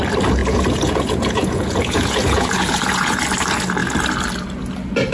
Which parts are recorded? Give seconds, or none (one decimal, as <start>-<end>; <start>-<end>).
0.0-0.4; 3.2-5.1